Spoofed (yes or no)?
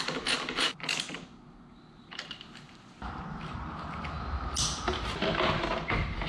no